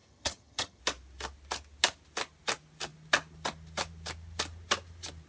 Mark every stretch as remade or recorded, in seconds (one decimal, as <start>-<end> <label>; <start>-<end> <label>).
0.0-0.8 remade; 0.8-5.3 recorded